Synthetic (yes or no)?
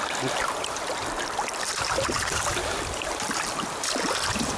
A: yes